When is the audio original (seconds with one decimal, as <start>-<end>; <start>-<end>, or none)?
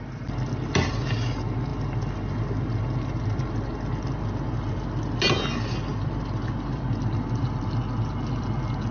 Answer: 0.0-5.9; 7.6-8.9